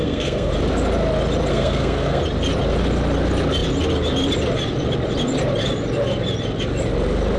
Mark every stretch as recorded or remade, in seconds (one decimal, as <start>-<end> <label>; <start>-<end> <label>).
0.0-0.5 remade; 0.5-1.5 recorded; 1.5-2.2 remade; 2.2-7.4 recorded